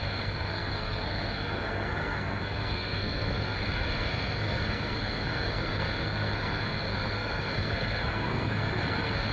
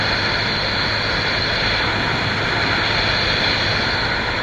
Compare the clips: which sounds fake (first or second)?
first